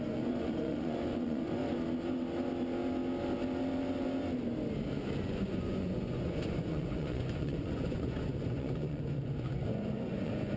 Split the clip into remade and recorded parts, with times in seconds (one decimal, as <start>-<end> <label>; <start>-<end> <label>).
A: 0.0-1.6 remade; 1.6-5.2 recorded; 5.2-10.6 remade